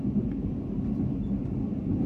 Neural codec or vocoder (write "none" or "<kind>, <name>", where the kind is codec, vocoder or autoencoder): none